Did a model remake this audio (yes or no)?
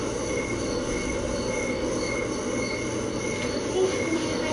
no